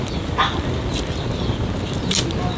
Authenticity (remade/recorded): recorded